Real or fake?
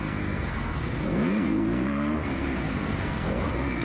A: fake